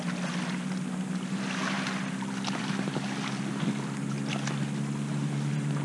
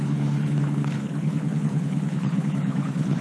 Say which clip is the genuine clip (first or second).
first